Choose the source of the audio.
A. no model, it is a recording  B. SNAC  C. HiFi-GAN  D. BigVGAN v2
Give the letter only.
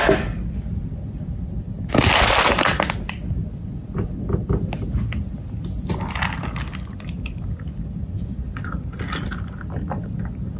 A